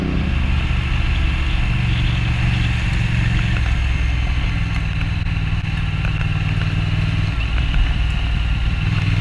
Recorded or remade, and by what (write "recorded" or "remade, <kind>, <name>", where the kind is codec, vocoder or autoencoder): recorded